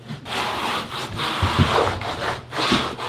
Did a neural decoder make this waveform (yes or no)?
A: yes